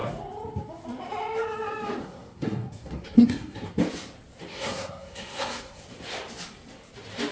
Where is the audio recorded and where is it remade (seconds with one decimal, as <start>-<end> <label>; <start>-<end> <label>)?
0.0-2.0 recorded; 2.0-3.8 remade; 3.8-4.5 recorded; 4.5-5.8 remade; 5.8-7.3 recorded